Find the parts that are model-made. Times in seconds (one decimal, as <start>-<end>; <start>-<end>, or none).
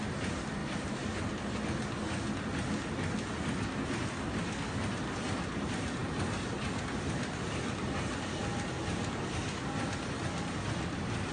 0.6-1.2